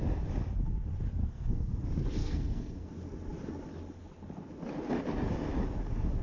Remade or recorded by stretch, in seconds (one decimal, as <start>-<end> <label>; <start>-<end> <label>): 0.0-1.2 recorded; 1.2-1.8 remade; 1.8-2.2 recorded; 2.2-2.9 remade; 2.9-6.2 recorded